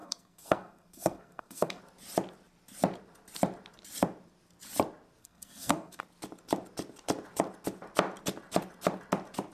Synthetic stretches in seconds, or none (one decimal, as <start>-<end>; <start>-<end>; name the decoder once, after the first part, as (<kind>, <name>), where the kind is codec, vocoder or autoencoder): 0.0-1.8 (codec, SNAC); 5.2-6.0